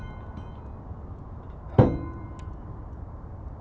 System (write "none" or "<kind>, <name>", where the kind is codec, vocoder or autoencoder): none